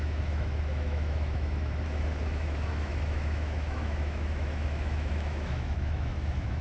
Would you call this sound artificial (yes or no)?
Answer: yes